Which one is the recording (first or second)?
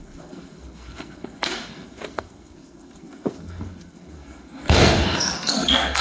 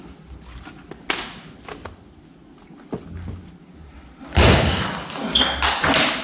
second